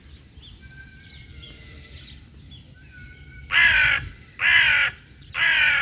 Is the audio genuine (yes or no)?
no